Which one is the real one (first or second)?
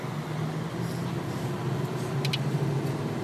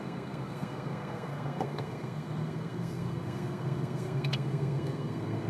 first